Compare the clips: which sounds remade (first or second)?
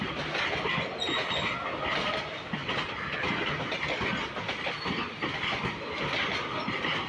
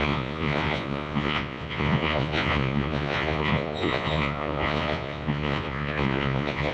second